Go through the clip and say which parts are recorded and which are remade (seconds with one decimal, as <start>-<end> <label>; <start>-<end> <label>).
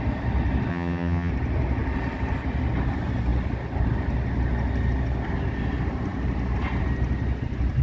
0.0-0.7 recorded; 0.7-1.3 remade; 1.3-7.8 recorded